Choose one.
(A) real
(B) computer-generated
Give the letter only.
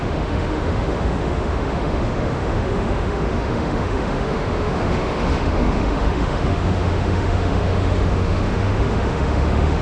B